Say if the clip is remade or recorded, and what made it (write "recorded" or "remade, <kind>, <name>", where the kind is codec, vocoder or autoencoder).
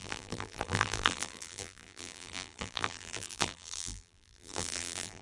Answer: remade, vocoder, BigVGAN v2